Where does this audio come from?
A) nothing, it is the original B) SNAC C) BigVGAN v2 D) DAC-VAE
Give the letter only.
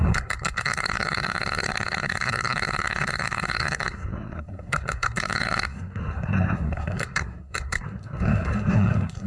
B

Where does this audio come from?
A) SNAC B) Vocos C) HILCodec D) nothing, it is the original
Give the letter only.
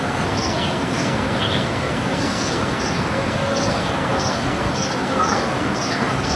A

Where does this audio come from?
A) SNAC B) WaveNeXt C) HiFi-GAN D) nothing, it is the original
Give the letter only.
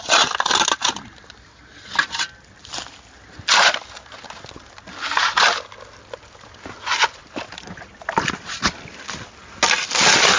D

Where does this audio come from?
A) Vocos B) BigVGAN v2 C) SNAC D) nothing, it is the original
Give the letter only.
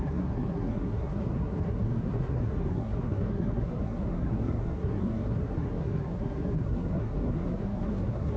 C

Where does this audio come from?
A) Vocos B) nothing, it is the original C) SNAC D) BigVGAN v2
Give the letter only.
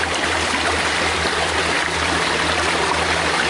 B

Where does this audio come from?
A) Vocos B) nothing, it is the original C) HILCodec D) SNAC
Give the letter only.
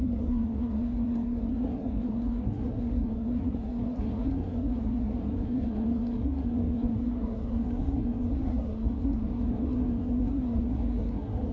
D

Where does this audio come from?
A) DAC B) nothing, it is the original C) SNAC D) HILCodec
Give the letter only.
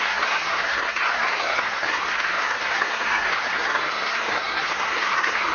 C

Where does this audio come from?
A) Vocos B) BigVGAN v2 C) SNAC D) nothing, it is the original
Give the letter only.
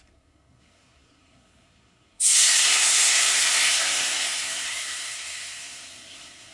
C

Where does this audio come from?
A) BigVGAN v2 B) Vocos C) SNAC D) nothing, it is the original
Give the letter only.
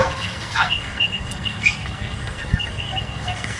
C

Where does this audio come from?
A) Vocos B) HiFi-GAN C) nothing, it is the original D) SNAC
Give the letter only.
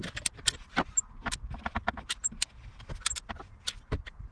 C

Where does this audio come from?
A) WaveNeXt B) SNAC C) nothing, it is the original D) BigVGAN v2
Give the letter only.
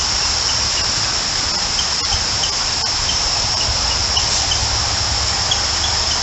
C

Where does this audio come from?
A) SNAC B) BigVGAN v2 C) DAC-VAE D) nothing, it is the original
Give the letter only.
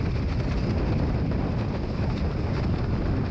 D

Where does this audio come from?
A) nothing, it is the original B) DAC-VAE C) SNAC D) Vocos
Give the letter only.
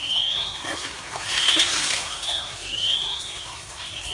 C